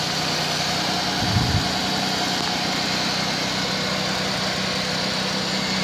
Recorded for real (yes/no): yes